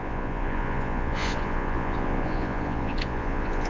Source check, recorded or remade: remade